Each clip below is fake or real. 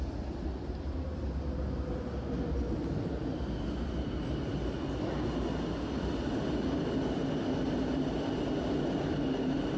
real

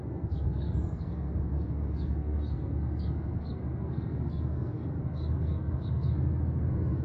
fake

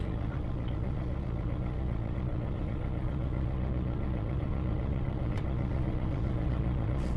fake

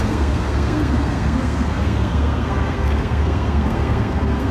fake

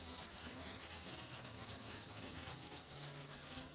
fake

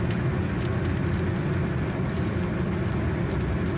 real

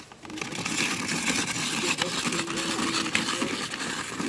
real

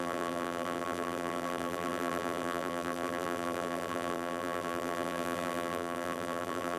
fake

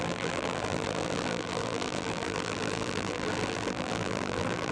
fake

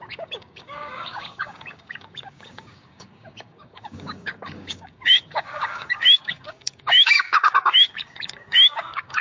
fake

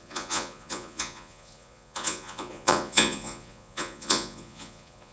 fake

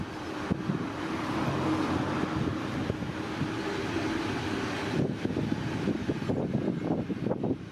real